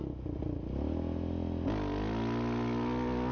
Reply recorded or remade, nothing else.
recorded